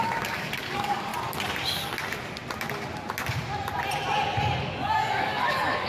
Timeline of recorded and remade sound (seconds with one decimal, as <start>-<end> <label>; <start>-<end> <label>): 0.0-1.1 remade; 1.1-4.6 recorded; 4.6-5.9 remade